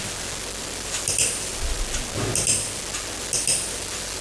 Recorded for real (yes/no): yes